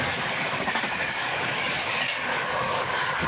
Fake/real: fake